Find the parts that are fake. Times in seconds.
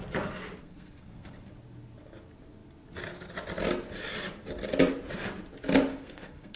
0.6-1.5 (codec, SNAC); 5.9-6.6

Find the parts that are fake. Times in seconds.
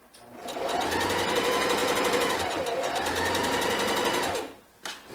none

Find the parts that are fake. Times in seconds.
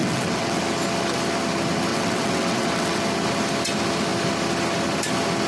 0.0-0.6 (vocoder, WaveNeXt); 1.9-3.0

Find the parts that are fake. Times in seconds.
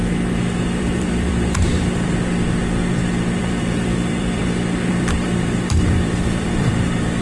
0.6-1.7 (vocoder, BigVGAN v2); 3.4-4.4; 4.9-7.2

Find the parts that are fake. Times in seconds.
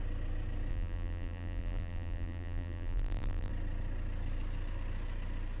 0.7-3.5 (vocoder, BigVGAN v2)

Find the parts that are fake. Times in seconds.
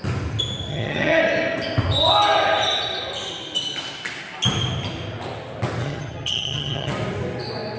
0.7-1.2 (vocoder, HiFi-GAN); 5.8-6.9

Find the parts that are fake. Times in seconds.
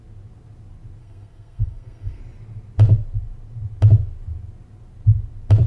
1.0-2.2 (codec, SNAC)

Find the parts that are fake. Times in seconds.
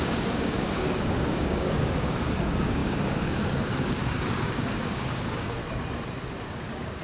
0.0-5.6 (codec, DAC); 6.4-7.0